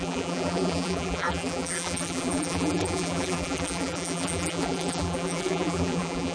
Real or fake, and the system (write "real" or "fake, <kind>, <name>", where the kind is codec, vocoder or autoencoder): fake, vocoder, BigVGAN v2